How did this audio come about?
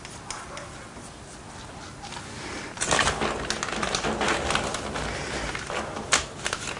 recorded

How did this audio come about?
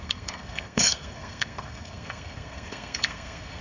remade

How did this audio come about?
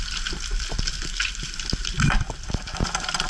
recorded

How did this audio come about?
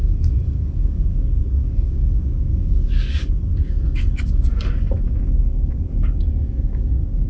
remade